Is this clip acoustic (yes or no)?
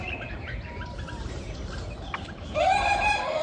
no